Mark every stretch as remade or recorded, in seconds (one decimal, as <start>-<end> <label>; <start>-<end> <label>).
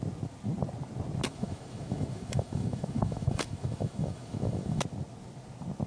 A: 0.0-1.3 recorded; 1.3-4.8 remade; 4.8-5.9 recorded